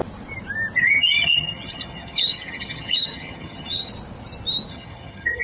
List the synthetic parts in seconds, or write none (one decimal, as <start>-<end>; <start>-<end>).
0.8-3.9; 4.7-5.4